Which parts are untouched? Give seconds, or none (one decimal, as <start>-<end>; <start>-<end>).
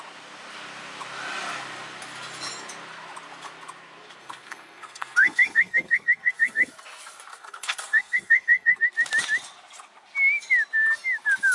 0.0-4.2; 6.7-7.3; 8.8-11.5